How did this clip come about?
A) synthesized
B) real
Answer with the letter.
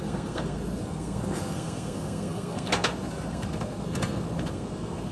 A